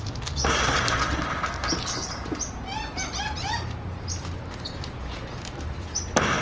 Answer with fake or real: fake